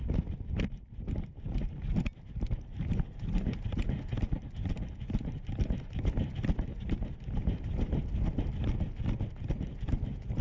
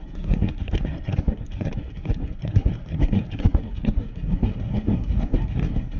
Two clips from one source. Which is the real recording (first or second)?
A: first